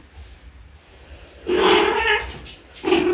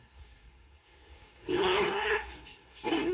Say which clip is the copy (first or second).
second